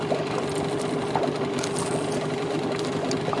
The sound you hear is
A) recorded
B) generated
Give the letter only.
A